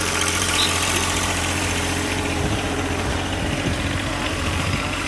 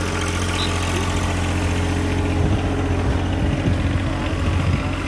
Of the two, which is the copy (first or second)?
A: first